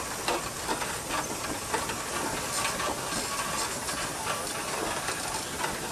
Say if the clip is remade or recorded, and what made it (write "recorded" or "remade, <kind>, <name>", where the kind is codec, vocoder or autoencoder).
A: recorded